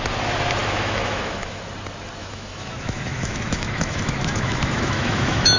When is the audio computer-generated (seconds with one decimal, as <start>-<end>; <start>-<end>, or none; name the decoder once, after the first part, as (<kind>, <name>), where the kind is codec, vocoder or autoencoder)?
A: 0.6-1.6 (autoencoder, DAC-VAE); 2.2-5.6